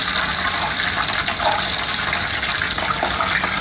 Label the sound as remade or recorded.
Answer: recorded